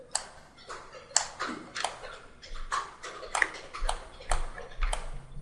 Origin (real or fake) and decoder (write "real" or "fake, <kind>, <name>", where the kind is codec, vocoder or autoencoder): real